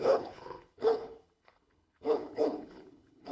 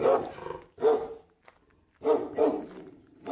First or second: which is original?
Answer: second